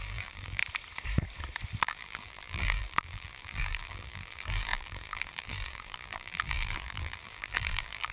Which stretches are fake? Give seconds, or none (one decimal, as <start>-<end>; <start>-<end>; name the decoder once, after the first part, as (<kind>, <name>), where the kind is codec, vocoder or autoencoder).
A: 0.0-0.6 (vocoder, BigVGAN v2); 1.8-8.1